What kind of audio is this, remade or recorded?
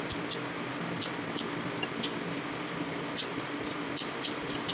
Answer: recorded